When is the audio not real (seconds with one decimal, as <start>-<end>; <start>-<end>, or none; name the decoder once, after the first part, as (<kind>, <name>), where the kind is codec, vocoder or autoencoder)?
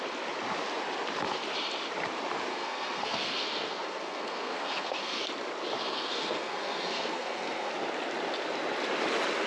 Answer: 2.5-5.2 (codec, SNAC); 5.8-7.7